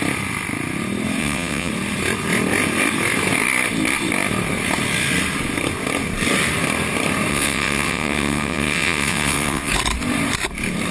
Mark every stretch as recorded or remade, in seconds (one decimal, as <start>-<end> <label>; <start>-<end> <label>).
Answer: 0.0-1.2 recorded; 1.2-1.7 remade; 1.7-7.3 recorded; 7.3-9.7 remade; 9.7-10.9 recorded